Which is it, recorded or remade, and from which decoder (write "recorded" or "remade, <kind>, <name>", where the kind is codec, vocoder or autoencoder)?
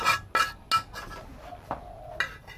recorded